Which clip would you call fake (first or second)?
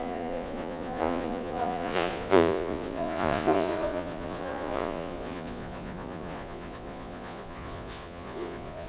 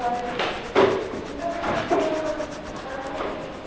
first